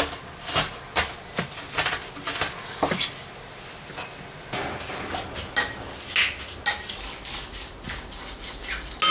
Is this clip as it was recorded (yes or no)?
yes